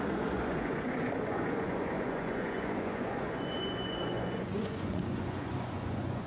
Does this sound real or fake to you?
fake